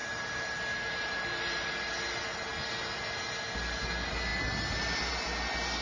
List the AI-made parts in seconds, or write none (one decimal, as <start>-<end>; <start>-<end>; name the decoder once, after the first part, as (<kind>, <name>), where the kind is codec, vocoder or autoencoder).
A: none